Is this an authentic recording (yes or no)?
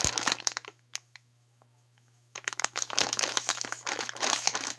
no